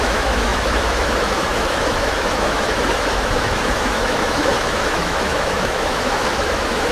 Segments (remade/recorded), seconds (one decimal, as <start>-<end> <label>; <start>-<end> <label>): 0.0-6.9 remade